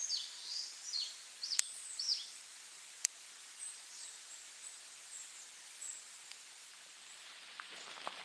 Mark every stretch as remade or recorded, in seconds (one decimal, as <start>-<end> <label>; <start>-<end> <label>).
0.0-4.4 remade; 4.4-6.6 recorded; 6.6-8.2 remade